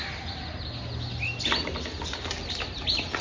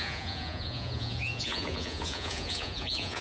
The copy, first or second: second